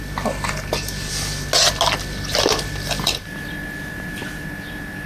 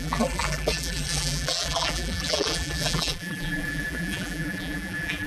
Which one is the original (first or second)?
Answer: first